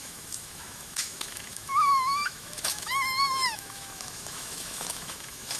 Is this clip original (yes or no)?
no